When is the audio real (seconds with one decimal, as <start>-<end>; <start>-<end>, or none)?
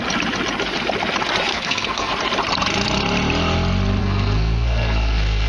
0.0-1.5; 2.1-4.0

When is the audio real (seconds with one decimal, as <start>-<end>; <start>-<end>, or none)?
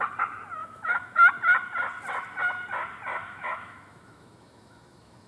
0.0-0.6; 1.3-3.2